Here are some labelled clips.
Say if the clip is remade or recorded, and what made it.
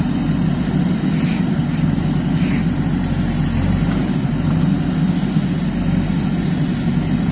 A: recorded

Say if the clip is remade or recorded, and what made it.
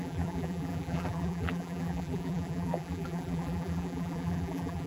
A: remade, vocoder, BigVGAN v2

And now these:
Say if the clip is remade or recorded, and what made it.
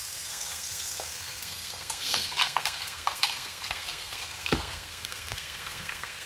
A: remade, codec, SNAC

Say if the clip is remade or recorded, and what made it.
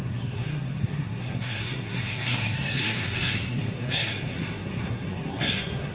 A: remade, codec, SNAC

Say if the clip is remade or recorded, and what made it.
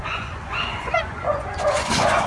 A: remade, vocoder, Vocos